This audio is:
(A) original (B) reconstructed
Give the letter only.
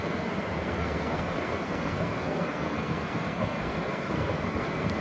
B